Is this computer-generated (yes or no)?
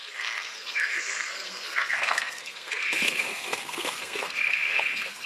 yes